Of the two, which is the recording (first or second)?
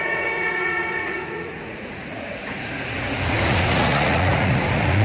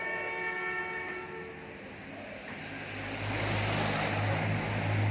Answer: second